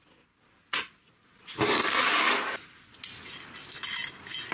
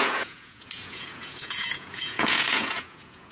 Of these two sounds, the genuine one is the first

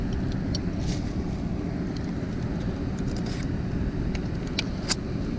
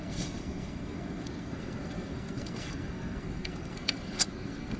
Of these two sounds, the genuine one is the first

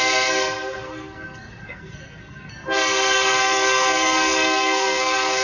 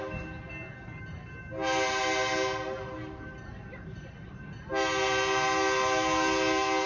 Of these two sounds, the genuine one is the second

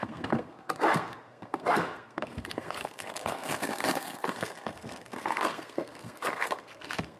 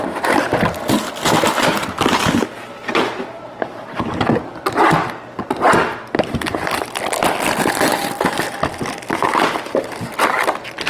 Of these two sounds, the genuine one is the second